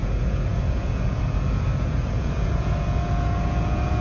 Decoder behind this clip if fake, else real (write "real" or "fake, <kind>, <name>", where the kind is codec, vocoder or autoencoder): fake, vocoder, Vocos